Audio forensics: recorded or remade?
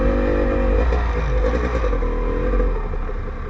recorded